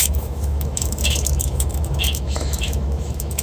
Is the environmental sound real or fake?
fake